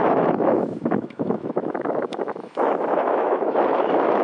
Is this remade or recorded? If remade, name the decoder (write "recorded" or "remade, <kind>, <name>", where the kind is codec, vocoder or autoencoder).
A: remade, autoencoder, DAC-VAE